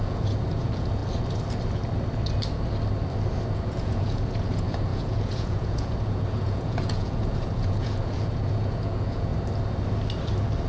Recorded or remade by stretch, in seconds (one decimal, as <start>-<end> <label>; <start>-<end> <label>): 0.0-1.0 remade; 1.0-3.5 recorded; 3.5-9.3 remade; 9.3-10.7 recorded

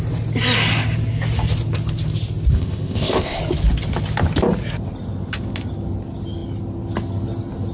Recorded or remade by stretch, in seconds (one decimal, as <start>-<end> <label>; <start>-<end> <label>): 0.0-2.5 recorded; 2.5-3.4 remade; 3.4-7.7 recorded

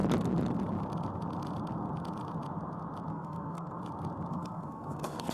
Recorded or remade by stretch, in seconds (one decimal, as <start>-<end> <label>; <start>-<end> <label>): 0.0-3.1 recorded; 3.1-3.8 remade; 3.8-4.3 recorded; 4.3-5.3 remade

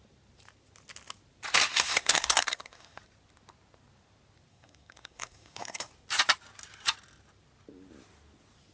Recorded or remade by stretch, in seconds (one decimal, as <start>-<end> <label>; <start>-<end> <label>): 0.0-1.7 recorded; 1.7-3.0 remade; 3.0-4.5 recorded; 4.5-5.9 remade; 5.9-8.7 recorded

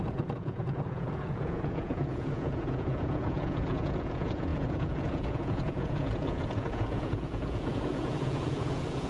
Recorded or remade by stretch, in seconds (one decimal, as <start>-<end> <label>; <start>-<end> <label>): 0.0-9.1 remade

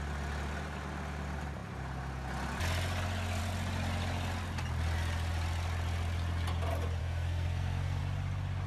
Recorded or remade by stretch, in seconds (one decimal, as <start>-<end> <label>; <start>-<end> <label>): 0.0-7.0 recorded; 7.0-8.0 remade; 8.0-8.7 recorded

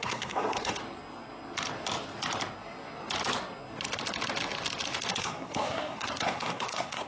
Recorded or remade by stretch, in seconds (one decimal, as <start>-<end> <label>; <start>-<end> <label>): 0.0-0.8 remade; 0.8-5.1 recorded; 5.1-7.1 remade